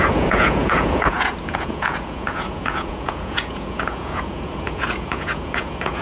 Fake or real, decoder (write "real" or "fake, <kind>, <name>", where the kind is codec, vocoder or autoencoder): fake, vocoder, Vocos